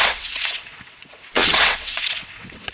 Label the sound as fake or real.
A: fake